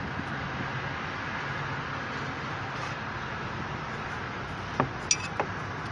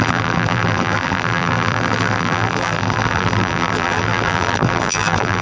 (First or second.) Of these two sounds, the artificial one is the second